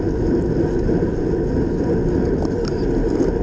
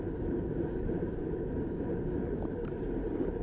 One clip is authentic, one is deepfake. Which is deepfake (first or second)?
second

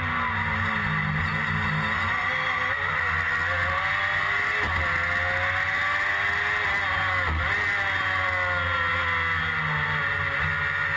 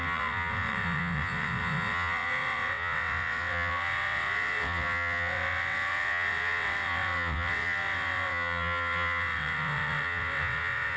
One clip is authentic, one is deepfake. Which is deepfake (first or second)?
second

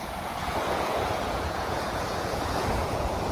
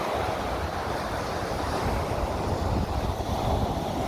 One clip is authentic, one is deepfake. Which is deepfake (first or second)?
first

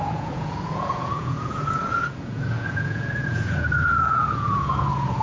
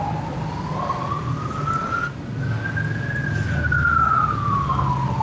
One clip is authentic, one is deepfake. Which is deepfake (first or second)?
first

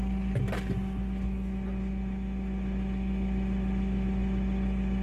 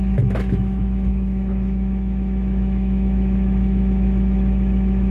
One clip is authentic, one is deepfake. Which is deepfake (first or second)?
second